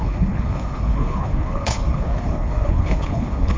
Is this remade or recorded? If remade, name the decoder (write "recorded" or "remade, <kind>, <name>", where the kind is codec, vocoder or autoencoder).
remade, codec, HILCodec